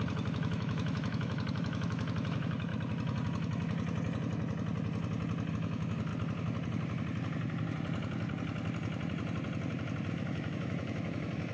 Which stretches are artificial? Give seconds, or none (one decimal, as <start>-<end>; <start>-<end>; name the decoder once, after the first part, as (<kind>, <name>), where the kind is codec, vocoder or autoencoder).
0.0-2.7 (autoencoder, DAC-VAE); 5.5-6.1; 10.1-11.5